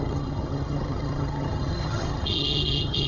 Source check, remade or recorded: remade